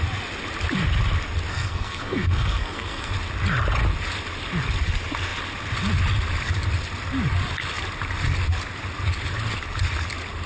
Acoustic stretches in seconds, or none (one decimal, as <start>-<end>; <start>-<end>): 0.0-1.5; 3.1-10.5